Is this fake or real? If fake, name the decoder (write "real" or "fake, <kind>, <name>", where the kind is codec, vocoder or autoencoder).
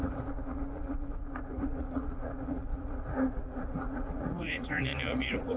fake, vocoder, Vocos